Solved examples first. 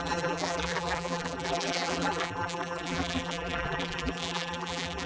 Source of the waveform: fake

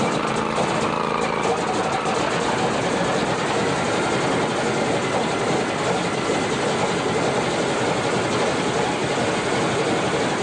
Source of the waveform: real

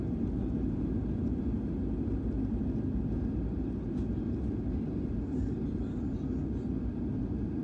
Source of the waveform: real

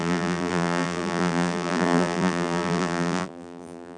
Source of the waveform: fake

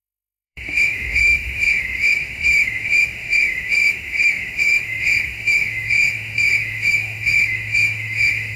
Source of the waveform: fake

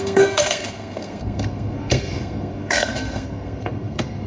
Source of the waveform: fake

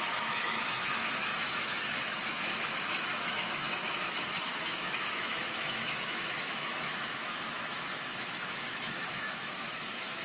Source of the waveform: fake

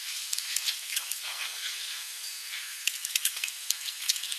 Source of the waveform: fake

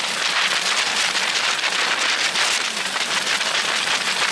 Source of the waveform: real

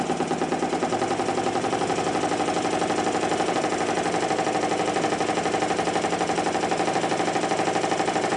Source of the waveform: real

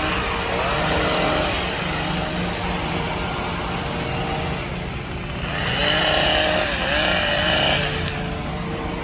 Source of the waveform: real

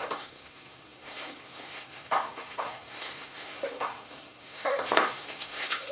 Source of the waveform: fake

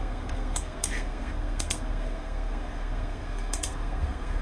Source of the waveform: fake